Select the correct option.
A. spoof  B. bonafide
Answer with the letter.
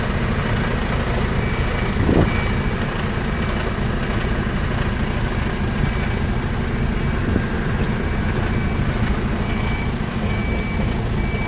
B